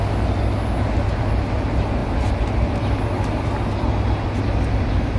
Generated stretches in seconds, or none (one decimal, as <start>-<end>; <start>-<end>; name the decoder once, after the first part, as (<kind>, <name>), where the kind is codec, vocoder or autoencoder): none